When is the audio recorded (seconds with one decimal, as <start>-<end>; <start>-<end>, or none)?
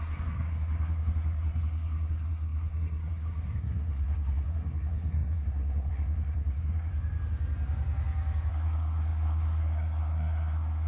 6.9-8.5